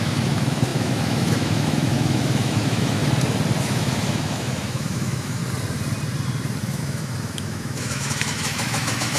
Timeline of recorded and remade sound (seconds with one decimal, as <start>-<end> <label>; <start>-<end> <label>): 0.0-3.0 remade; 3.0-3.6 recorded; 3.6-5.4 remade; 5.4-6.6 recorded; 6.6-9.2 remade